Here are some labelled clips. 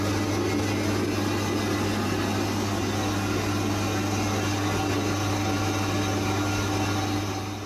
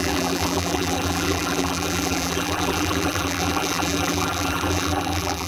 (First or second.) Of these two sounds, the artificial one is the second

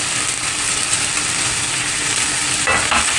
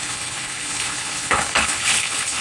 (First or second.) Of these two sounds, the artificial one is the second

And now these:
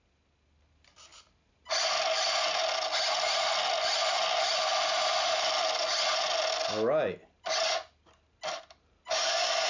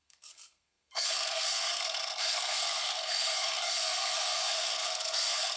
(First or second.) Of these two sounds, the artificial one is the second